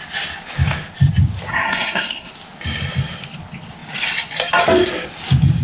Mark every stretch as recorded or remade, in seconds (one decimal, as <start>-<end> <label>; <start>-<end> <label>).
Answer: 0.0-1.5 recorded; 1.5-2.3 remade; 2.3-5.6 recorded

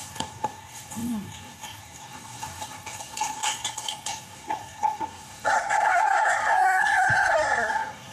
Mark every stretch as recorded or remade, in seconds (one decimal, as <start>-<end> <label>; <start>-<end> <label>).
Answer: 0.0-8.1 remade

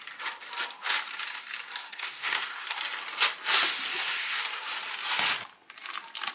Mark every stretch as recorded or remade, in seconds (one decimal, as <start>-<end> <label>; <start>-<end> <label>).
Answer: 0.0-1.8 recorded; 1.8-2.8 remade; 2.8-6.3 recorded

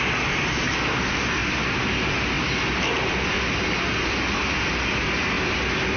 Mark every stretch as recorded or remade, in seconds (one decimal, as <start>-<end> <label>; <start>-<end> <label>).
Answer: 0.0-6.0 recorded